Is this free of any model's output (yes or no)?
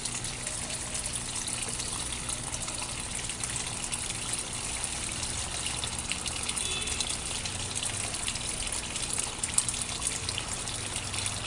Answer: yes